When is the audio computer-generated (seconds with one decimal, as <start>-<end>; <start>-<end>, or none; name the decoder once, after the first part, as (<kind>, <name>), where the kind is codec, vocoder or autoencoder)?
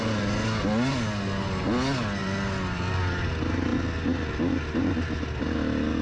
none